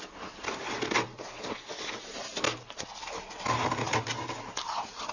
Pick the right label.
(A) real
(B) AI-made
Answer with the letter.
A